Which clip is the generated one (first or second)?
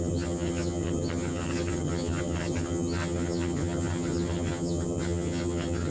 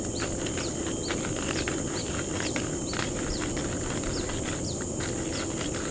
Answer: first